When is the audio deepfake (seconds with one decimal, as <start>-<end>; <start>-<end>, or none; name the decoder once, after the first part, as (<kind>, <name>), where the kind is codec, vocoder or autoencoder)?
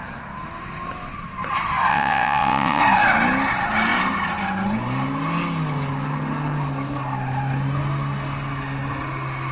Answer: 1.9-2.8 (vocoder, WaveNeXt)